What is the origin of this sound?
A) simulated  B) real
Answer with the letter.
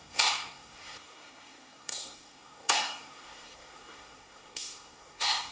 A